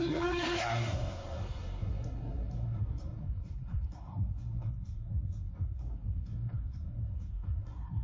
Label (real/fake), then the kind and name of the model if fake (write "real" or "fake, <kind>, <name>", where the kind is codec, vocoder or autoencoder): fake, codec, SNAC